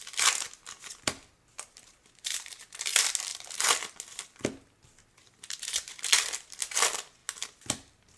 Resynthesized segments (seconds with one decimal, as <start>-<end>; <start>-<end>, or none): 1.5-2.6; 3.3-3.9; 5.2-6.0